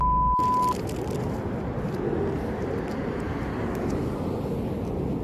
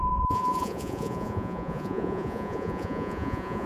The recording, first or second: first